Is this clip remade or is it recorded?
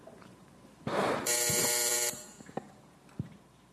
remade